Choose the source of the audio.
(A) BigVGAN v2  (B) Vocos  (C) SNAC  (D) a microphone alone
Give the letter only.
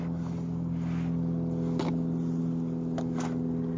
D